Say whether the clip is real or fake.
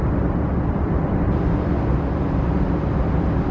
real